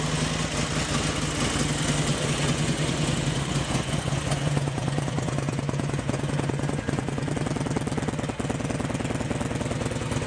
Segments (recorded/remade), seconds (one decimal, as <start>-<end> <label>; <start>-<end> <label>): 0.0-2.1 recorded; 2.1-7.3 remade; 7.3-10.3 recorded